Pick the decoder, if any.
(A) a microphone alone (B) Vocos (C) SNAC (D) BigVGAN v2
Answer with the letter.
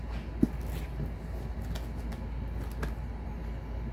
A